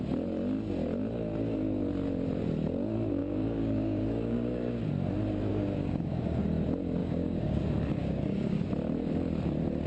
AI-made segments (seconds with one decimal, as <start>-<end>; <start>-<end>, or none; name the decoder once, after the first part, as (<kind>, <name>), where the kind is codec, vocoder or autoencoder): 3.2-4.9 (codec, DAC); 5.5-6.4; 7.0-7.6; 8.0-8.6